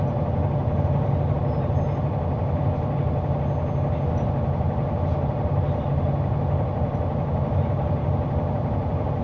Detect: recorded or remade recorded